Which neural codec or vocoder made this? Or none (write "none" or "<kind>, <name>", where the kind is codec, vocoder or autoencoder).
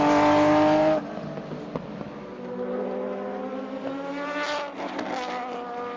none